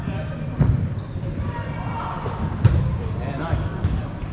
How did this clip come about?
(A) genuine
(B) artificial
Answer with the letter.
B